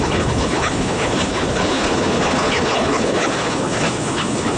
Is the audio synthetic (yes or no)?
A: yes